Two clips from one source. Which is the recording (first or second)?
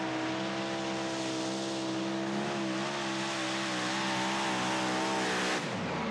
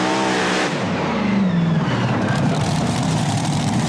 first